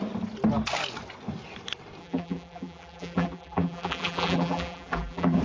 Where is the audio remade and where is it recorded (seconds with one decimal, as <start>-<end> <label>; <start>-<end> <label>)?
0.0-2.0 recorded; 2.0-5.4 remade